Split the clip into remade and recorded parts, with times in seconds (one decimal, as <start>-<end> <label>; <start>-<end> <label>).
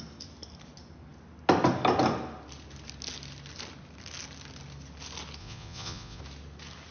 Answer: 0.0-5.4 recorded; 5.4-6.2 remade; 6.2-6.9 recorded